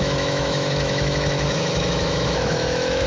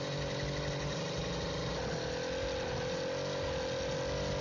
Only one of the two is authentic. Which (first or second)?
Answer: second